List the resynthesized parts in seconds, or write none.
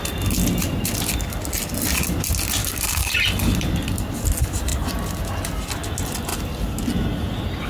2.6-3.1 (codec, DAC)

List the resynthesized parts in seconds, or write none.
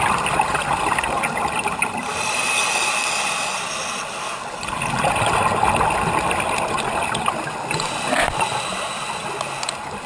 none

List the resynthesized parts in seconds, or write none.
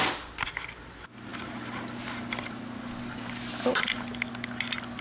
none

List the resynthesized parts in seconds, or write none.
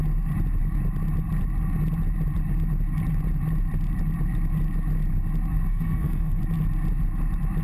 5.5-6.4 (codec, SNAC)